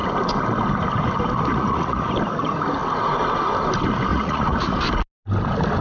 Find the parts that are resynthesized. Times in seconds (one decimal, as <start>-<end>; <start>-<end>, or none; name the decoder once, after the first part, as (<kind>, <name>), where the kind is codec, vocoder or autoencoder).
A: 1.5-2.1 (vocoder, Vocos); 4.1-4.8